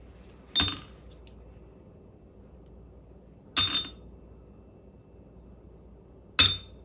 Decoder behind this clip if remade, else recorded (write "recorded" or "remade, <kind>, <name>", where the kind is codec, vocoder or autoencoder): recorded